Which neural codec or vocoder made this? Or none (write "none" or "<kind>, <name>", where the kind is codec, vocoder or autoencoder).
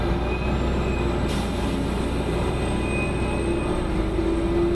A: none